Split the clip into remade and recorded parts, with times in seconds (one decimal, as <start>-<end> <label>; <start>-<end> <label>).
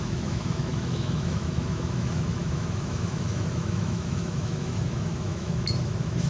0.0-6.3 remade